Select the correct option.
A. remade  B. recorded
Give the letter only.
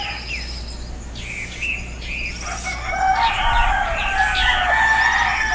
B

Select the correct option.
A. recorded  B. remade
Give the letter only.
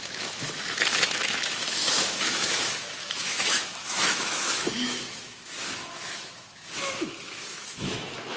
B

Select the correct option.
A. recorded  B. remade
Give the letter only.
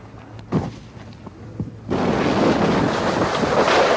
A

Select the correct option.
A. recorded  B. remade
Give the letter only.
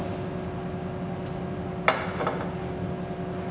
A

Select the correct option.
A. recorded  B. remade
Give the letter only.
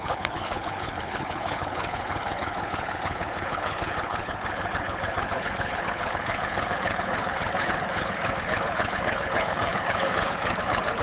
B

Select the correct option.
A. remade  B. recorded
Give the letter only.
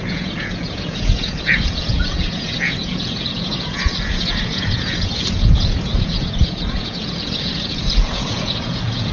A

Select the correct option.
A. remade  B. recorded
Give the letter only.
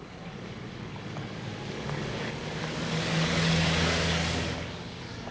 A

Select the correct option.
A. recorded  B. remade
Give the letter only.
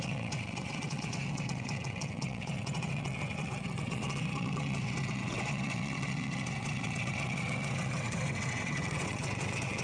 B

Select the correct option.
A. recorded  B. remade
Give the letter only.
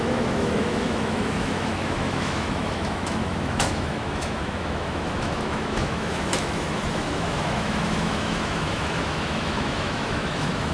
B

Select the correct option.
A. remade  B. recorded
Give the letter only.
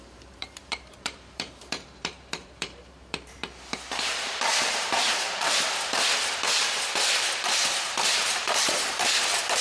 A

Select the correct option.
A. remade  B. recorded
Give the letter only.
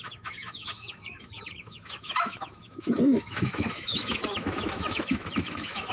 A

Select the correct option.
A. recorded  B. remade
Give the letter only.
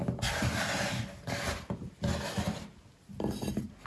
A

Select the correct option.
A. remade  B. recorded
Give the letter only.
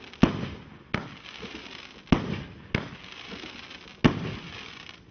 B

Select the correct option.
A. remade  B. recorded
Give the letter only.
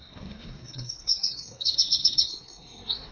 A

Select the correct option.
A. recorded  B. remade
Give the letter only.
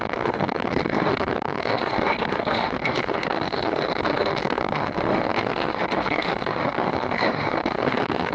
B